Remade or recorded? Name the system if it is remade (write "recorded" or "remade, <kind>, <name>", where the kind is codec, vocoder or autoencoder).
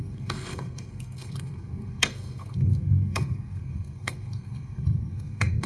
remade, codec, SNAC